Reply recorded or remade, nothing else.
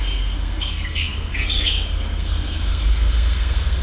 remade